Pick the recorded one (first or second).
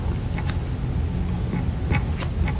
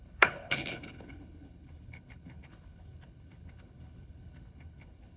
first